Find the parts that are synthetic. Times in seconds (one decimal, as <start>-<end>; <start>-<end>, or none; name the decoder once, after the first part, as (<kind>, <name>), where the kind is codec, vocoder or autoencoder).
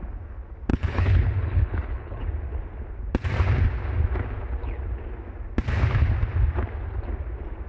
0.7-2.2 (codec, HILCodec)